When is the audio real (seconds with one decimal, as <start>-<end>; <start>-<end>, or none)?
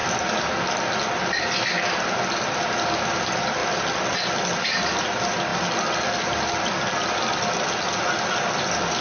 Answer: 0.0-9.0